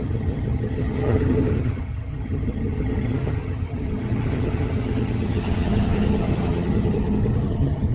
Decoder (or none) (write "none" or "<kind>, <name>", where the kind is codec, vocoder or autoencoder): vocoder, HiFi-GAN